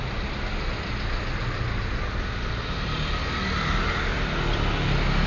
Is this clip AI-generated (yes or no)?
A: no